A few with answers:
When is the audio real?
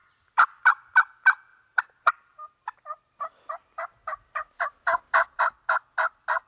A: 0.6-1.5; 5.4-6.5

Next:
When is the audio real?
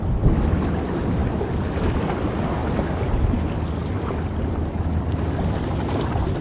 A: 0.0-3.8; 5.2-6.4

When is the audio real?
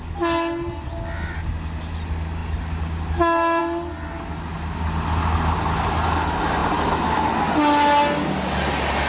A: 0.0-9.1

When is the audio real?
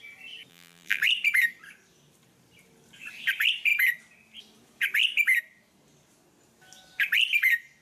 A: 0.0-0.5; 1.0-7.8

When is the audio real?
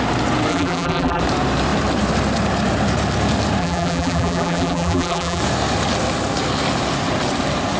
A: 0.0-0.5; 1.2-3.6; 5.4-7.8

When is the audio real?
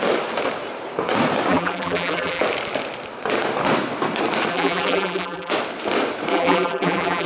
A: 0.0-1.5; 2.4-4.5; 5.5-6.3